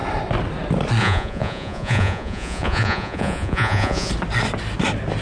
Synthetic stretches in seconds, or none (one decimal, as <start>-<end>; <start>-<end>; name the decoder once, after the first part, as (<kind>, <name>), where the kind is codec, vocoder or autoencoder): 1.0-4.1 (vocoder, Vocos)